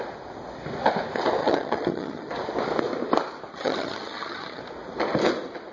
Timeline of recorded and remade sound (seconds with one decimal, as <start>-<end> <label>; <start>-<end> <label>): 0.0-1.4 recorded; 1.4-2.3 remade; 2.3-3.5 recorded; 3.5-4.6 remade; 4.6-5.7 recorded